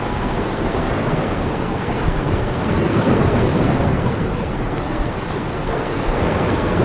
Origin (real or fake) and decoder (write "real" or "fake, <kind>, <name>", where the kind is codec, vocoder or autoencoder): fake, codec, SNAC